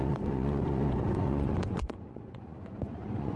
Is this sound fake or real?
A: fake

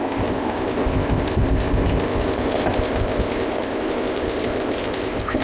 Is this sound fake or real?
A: fake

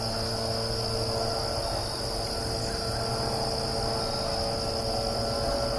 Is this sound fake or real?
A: real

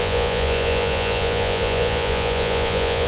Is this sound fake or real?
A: fake